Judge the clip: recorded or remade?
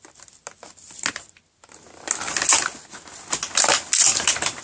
recorded